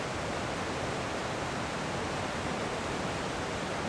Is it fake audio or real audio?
real